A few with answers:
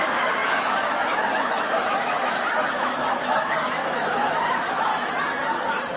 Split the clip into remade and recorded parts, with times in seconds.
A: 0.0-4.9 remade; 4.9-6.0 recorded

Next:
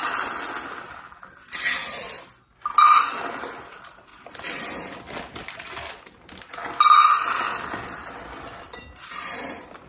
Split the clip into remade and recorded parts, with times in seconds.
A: 0.0-9.9 recorded

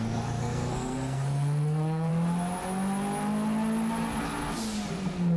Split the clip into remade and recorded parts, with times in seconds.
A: 0.0-2.1 remade; 2.1-4.9 recorded; 4.9-5.4 remade